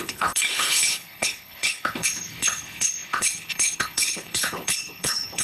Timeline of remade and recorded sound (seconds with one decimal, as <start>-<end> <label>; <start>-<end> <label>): 0.0-5.4 remade